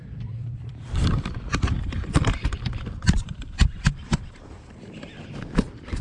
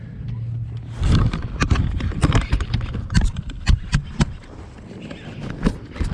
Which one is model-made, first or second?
first